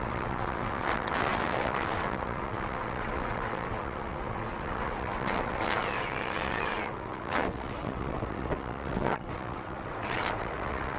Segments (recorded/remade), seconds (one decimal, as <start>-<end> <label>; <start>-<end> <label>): 0.0-11.0 remade